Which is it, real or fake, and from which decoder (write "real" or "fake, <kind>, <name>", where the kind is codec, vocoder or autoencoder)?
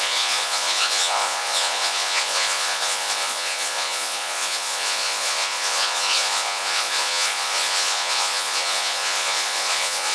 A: fake, vocoder, Vocos